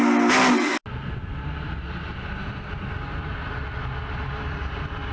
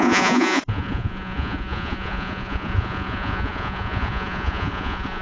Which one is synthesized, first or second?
second